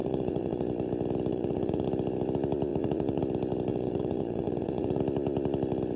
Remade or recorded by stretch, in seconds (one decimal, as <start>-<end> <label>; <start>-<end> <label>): 0.0-0.7 remade; 0.7-1.3 recorded; 1.3-1.9 remade; 1.9-2.7 recorded; 2.7-3.2 remade; 3.2-3.7 recorded; 3.7-5.0 remade; 5.0-6.0 recorded